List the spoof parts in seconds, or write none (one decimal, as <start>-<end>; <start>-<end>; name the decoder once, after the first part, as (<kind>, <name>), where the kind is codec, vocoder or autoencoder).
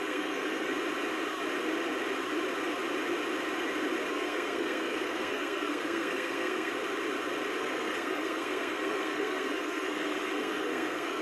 0.0-0.7 (codec, SNAC); 4.1-6.7; 7.6-11.2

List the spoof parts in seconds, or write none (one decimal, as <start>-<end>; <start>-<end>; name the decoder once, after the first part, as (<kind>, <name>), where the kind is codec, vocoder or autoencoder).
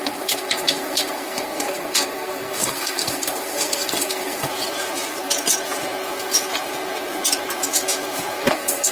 0.0-4.5 (codec, SNAC); 8.5-8.9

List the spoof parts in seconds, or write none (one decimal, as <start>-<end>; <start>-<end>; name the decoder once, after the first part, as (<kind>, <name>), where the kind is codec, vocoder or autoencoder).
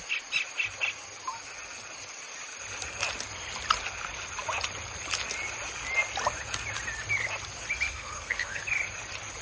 7.9-8.6 (codec, SNAC)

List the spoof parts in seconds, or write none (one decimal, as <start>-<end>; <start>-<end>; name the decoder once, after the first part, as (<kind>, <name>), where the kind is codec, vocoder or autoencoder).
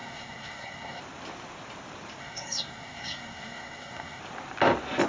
0.0-1.0 (codec, SNAC); 2.2-4.2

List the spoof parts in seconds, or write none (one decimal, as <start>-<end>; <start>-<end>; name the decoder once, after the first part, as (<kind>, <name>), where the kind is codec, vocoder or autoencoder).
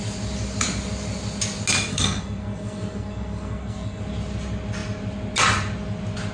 1.9-4.0 (codec, SNAC)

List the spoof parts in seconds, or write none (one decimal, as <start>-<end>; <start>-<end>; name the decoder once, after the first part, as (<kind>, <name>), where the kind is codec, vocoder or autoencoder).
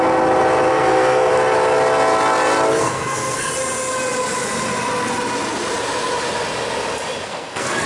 0.7-1.3 (codec, SNAC); 2.8-3.5; 7.2-7.9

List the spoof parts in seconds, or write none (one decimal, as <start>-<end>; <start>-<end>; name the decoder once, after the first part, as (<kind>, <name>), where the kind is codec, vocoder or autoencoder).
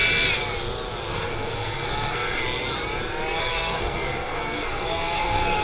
1.1-2.4 (codec, SNAC); 3.4-5.6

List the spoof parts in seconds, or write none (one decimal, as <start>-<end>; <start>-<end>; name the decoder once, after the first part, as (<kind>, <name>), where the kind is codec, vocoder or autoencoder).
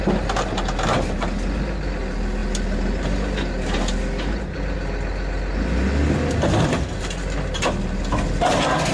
none